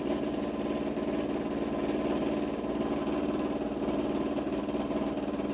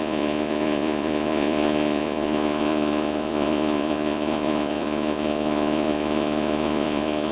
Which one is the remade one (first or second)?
second